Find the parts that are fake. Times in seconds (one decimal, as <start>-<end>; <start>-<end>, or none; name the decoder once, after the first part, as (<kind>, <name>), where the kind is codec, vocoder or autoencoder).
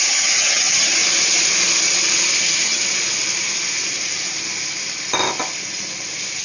0.0-1.0 (vocoder, HiFi-GAN); 2.4-2.8